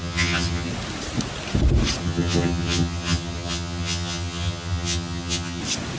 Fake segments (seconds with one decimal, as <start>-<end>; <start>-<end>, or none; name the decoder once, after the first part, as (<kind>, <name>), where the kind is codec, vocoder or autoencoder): 0.0-0.7 (vocoder, HiFi-GAN); 2.0-5.6